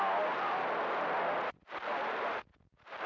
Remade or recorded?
recorded